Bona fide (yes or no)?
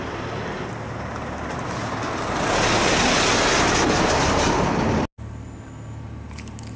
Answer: yes